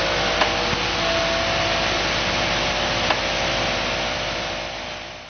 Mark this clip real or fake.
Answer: real